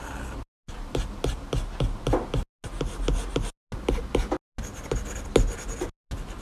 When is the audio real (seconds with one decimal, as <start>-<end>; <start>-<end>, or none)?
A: 0.0-6.4